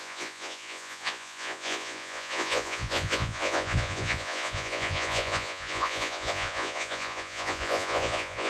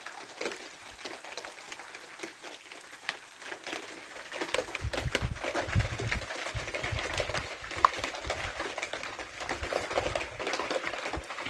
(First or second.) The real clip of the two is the second